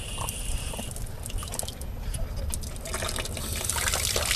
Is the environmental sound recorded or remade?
recorded